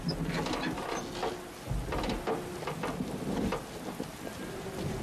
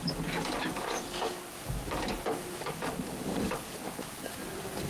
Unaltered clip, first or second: first